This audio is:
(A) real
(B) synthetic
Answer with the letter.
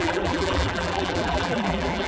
B